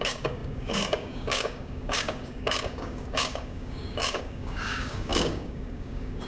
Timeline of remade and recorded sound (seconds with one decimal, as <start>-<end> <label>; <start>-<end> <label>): 0.0-6.3 remade